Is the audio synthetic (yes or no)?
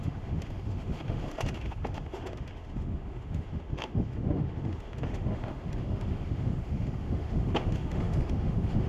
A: yes